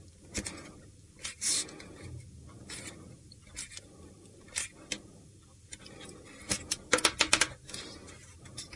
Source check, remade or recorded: recorded